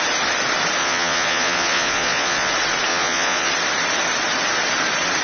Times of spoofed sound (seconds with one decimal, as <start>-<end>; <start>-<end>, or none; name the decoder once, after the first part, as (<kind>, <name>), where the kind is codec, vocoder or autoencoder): 0.8-2.5 (vocoder, Vocos); 2.9-3.5